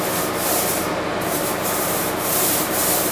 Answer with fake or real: fake